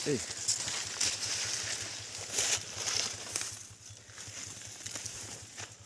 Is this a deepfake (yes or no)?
no